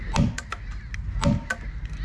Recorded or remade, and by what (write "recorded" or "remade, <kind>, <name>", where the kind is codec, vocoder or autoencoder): recorded